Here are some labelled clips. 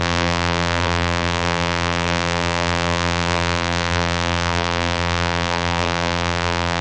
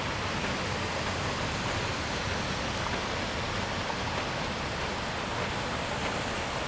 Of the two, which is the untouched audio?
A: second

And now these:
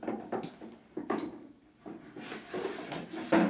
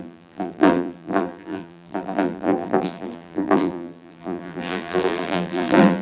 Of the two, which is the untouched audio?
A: first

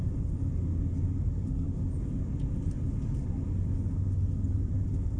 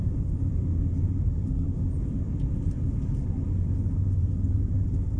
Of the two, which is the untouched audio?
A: first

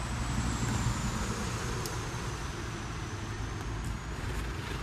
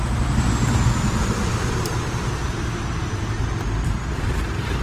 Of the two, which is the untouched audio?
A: first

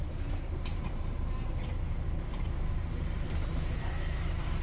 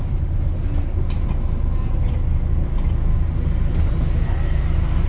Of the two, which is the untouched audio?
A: second